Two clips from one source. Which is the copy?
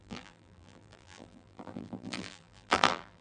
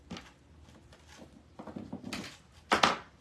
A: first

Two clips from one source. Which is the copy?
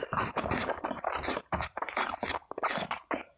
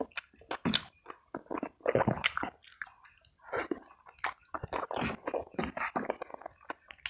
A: first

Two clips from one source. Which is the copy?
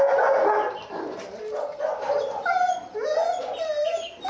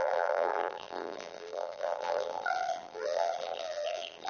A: second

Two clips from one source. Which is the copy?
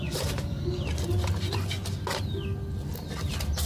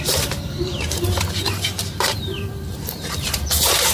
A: second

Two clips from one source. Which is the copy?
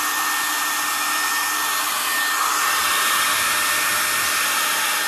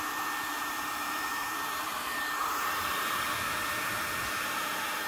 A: second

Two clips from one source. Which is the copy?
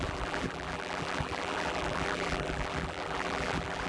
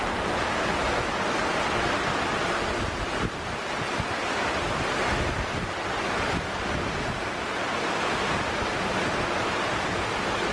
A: first